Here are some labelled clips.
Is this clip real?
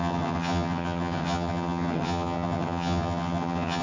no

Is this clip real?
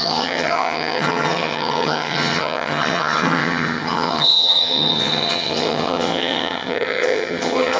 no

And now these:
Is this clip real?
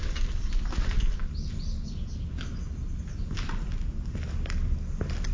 yes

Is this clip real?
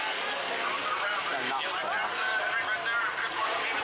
yes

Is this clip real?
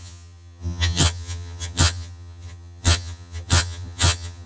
no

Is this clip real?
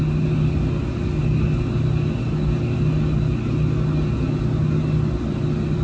yes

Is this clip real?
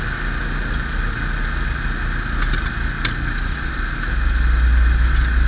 yes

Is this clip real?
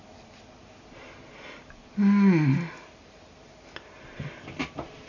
yes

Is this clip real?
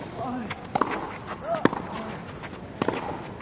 yes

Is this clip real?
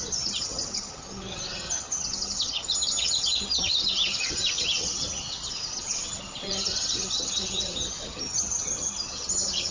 no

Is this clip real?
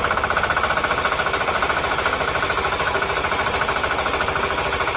yes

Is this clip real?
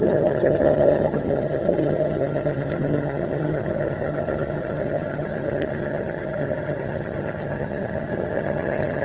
no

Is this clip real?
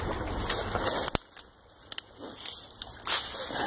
yes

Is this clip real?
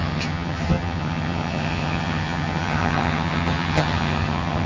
no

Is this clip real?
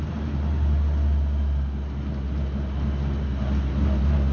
yes